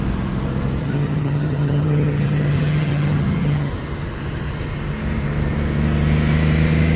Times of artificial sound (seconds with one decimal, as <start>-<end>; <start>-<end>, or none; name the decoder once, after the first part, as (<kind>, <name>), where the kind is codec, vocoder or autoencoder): 0.8-3.7 (vocoder, HiFi-GAN)